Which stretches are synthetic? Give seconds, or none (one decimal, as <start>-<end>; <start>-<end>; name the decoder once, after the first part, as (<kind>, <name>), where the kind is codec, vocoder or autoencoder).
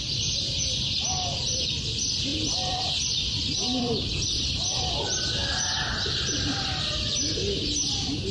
2.3-4.9 (vocoder, BigVGAN v2); 5.4-6.7